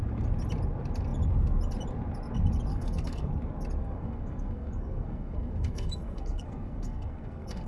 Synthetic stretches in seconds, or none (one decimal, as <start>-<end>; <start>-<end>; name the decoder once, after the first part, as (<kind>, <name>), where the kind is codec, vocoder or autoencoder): 2.7-3.3 (codec, SNAC); 3.8-7.7